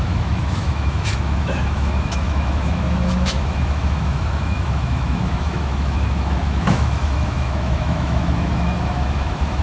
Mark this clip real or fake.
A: fake